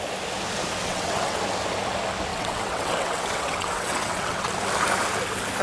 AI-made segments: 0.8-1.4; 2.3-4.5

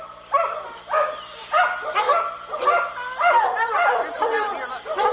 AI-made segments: none

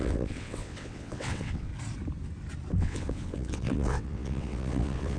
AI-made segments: 0.0-1.7; 2.8-5.2

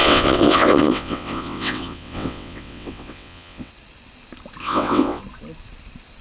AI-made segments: 0.0-3.7; 4.6-5.2